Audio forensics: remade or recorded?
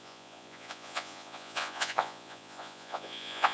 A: remade